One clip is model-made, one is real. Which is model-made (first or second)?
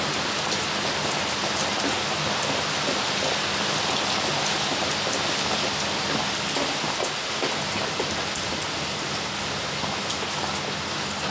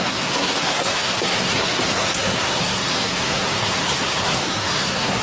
second